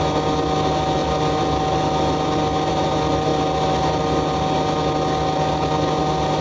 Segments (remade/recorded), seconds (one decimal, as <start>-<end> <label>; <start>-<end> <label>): 0.0-6.4 recorded